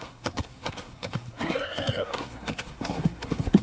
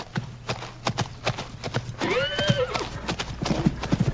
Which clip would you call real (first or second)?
second